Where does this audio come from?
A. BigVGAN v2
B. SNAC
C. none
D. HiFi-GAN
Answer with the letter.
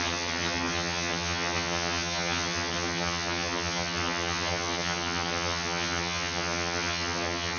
D